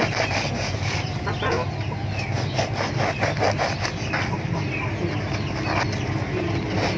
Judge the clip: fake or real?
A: real